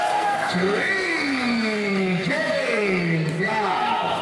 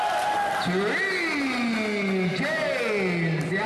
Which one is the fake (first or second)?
first